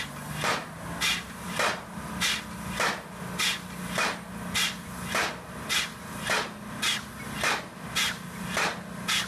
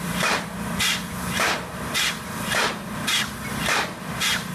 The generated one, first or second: second